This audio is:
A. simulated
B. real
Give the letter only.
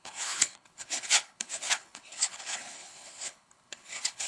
A